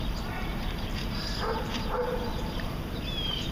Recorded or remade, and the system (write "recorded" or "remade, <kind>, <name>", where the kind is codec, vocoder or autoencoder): remade, vocoder, BigVGAN v2